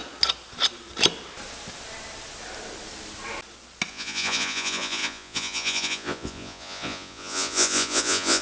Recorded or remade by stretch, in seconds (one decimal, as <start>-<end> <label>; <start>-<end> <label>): 0.0-3.9 recorded; 3.9-8.4 remade